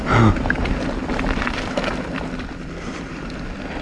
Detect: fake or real real